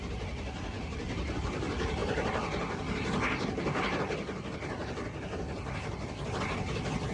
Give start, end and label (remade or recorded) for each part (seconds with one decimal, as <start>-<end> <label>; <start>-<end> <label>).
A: 0.0-7.1 recorded